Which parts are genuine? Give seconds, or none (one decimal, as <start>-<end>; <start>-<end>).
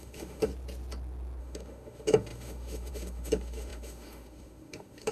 0.5-1.4